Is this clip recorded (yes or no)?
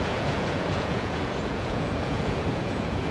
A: no